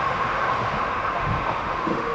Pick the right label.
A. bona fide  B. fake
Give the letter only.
B